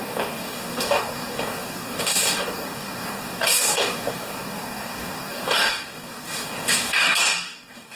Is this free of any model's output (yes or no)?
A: no